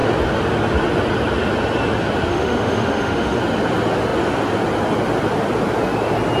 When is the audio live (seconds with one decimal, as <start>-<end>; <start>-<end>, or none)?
0.0-2.3; 3.4-6.4